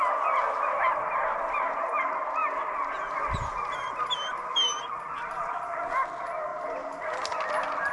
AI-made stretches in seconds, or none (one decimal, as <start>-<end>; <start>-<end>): none